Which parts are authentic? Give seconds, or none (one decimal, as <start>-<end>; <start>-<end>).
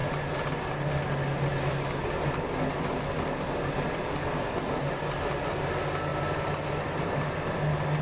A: 0.0-8.0